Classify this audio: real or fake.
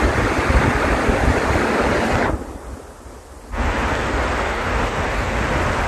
real